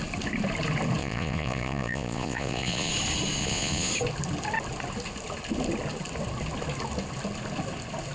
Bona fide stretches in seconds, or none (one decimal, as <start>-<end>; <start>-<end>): 0.0-1.0; 2.9-3.4; 3.9-8.1